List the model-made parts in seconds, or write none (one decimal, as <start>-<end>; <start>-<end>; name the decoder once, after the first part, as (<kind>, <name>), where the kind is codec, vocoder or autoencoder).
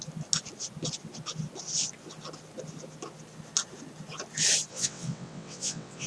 4.7-6.1 (vocoder, WaveNeXt)